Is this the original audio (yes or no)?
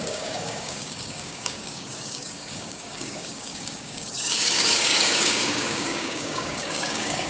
no